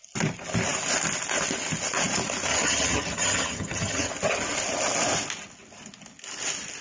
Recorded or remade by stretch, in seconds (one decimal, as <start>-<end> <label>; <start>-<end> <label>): 0.0-2.5 recorded; 2.5-4.1 remade; 4.1-6.8 recorded

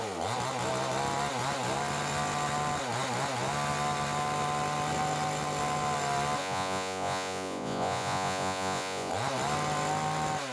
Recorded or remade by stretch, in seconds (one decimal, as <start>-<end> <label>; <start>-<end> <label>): 0.0-6.4 recorded; 6.4-9.1 remade; 9.1-10.5 recorded

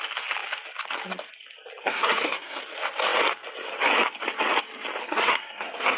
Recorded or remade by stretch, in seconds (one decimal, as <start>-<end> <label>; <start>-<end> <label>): 0.0-1.8 recorded; 1.8-2.6 remade; 2.6-5.0 recorded; 5.0-6.0 remade

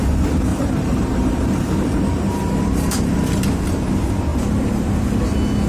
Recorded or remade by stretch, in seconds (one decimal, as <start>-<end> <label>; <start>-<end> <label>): 0.0-0.5 recorded; 0.5-3.9 remade; 3.9-4.3 recorded; 4.3-5.0 remade; 5.0-5.7 recorded